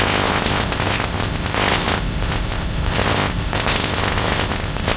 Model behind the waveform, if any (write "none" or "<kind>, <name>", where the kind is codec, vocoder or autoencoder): codec, ZipCodec